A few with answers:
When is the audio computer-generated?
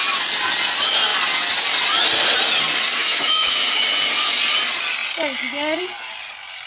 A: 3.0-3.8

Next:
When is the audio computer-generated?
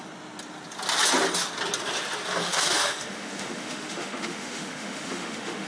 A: 2.4-5.7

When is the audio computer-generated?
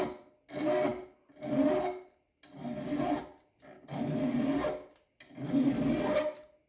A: none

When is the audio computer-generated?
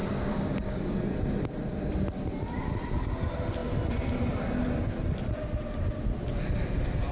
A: 0.0-1.0